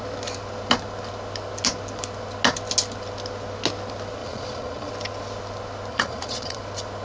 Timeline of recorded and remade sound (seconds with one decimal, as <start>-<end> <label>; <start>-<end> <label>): 0.0-4.2 recorded; 4.2-4.9 remade; 4.9-5.9 recorded; 5.9-6.6 remade; 6.6-7.0 recorded

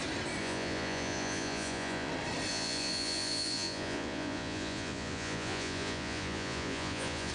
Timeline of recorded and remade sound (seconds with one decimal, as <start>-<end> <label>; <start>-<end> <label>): 0.0-0.4 recorded; 0.4-2.1 remade; 2.1-2.5 recorded; 2.5-7.3 remade

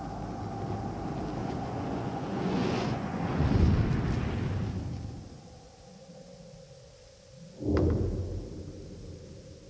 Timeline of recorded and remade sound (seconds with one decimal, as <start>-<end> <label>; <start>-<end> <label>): 0.0-1.4 recorded; 1.4-3.7 remade; 3.7-9.7 recorded

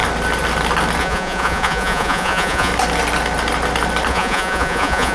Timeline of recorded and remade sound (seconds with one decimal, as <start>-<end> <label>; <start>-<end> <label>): 0.0-1.0 recorded; 1.0-2.7 remade; 2.7-4.1 recorded; 4.1-5.1 remade

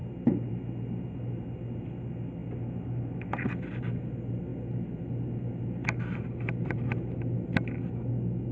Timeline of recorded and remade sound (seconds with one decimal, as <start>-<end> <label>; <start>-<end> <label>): 0.0-8.5 recorded

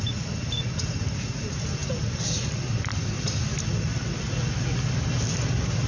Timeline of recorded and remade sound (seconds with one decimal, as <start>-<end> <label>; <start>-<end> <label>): 0.0-5.9 recorded